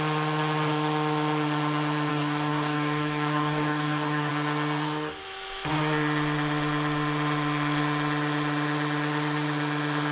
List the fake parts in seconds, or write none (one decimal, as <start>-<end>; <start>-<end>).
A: 2.1-4.3